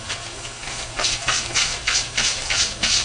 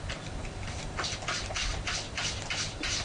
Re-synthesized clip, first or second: first